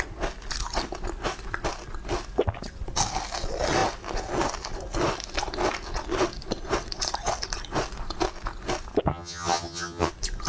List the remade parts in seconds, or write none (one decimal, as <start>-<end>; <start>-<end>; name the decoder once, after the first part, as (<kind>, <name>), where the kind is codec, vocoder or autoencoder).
9.1-10.1 (vocoder, HiFi-GAN)